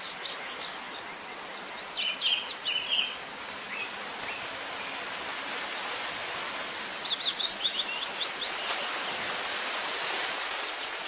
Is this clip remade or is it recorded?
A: recorded